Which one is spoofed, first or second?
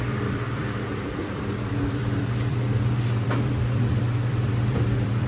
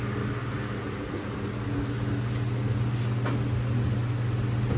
first